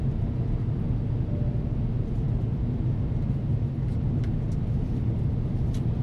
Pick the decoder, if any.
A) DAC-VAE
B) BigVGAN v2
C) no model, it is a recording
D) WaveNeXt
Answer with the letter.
C